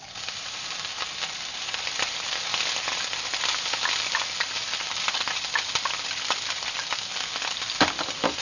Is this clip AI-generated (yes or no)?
no